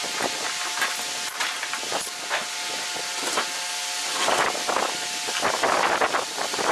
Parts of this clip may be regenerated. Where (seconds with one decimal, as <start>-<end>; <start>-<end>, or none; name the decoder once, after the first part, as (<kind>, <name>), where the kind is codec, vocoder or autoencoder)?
none